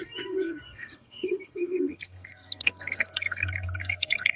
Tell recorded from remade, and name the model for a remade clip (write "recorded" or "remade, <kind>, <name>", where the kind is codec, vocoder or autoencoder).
remade, codec, SNAC